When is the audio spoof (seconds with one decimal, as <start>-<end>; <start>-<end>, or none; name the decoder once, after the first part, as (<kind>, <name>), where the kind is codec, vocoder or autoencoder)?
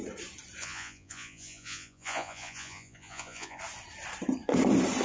0.6-3.6 (vocoder, Vocos)